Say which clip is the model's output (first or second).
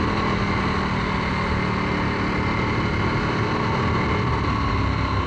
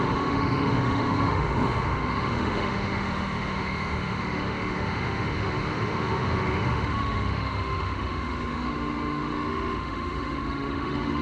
second